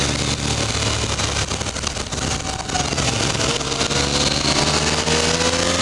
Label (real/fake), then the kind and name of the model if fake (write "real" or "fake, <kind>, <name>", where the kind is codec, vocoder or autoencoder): real